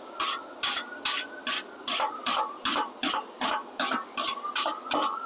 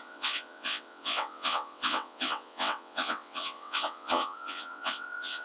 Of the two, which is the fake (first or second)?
second